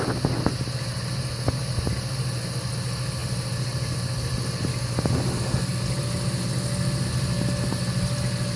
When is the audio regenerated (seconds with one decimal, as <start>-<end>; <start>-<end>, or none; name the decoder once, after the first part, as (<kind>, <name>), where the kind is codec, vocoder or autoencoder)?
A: none